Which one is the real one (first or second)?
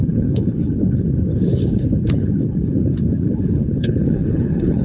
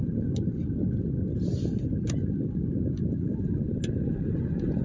second